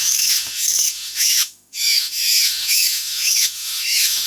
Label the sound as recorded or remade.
remade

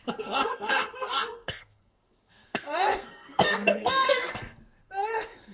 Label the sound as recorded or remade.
remade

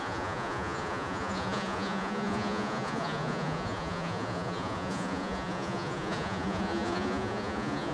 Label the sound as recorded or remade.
remade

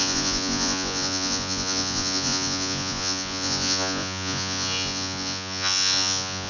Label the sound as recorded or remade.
remade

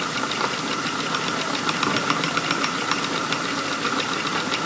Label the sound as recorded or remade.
recorded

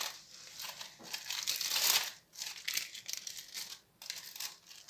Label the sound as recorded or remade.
recorded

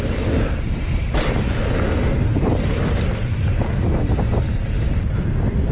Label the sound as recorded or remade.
recorded